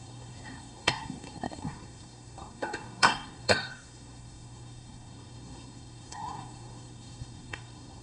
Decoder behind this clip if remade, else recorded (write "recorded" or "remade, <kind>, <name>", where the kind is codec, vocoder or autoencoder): remade, codec, SNAC